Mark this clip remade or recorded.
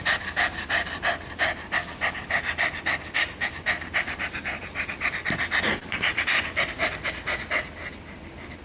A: recorded